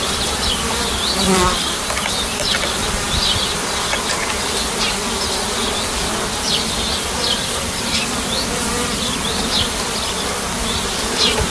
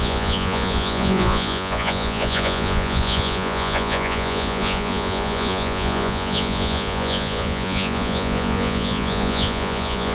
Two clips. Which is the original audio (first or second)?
first